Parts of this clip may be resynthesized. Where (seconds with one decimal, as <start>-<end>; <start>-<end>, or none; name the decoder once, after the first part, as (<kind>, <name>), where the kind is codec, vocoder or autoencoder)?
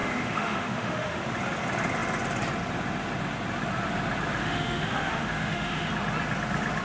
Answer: 0.0-1.2 (autoencoder, DAC-VAE); 4.4-5.9